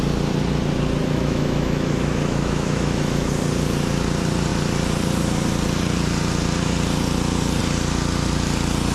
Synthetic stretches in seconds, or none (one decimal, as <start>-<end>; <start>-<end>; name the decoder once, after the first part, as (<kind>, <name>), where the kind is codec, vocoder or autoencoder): 1.0-3.3 (autoencoder, DAC-VAE)